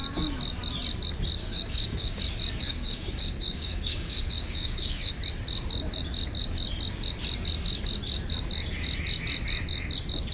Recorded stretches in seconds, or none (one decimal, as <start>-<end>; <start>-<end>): 0.0-1.4; 2.2-2.6; 5.1-10.3